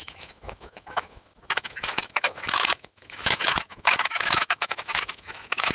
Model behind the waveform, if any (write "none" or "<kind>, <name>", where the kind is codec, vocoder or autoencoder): autoencoder, DAC-VAE